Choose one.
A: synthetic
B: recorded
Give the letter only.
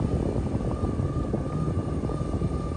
B